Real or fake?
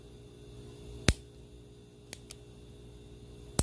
real